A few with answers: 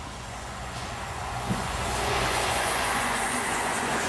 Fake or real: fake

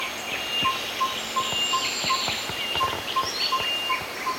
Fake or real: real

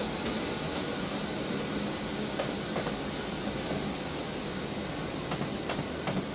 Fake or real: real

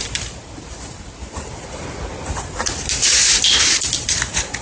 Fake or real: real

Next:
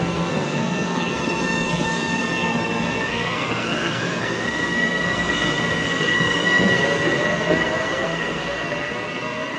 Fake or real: fake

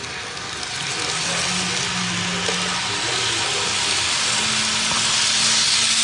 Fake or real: real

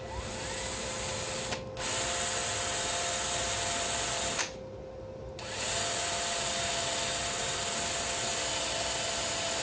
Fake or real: real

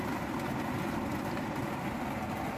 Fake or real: real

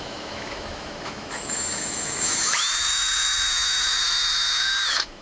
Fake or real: fake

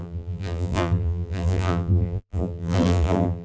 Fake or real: fake